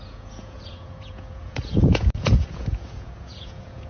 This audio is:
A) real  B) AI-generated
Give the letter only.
B